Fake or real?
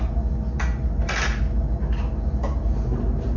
real